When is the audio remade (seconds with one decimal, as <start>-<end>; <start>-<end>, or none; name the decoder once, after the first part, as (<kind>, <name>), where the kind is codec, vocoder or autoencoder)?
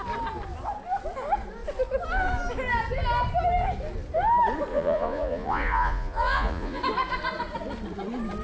4.7-6.8 (vocoder, Vocos)